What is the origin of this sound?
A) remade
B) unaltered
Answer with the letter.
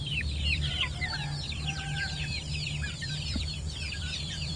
A